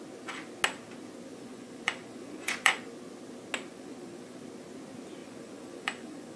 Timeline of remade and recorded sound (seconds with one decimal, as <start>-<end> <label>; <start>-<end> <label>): 0.0-1.3 recorded; 1.3-2.8 remade; 2.8-3.7 recorded; 3.7-4.4 remade; 4.4-5.2 recorded; 5.2-6.4 remade